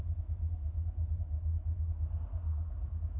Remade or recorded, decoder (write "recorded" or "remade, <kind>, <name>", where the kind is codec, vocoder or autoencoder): recorded